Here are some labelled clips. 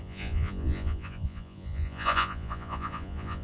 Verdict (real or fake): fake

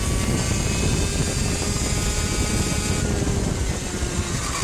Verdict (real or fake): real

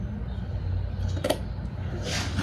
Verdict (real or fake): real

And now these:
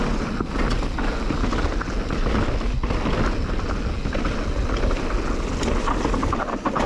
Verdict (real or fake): real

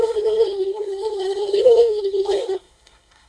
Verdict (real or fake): fake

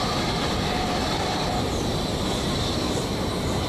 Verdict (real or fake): real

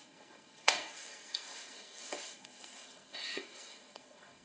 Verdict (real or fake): fake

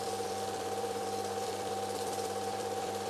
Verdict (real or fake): fake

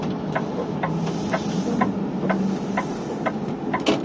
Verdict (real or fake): real